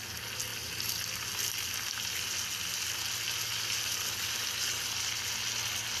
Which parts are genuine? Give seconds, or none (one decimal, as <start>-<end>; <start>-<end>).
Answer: 0.0-6.0